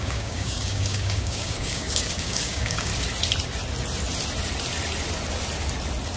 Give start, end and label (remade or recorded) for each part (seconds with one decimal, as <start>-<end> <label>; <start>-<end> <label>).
0.0-2.9 remade; 2.9-6.2 recorded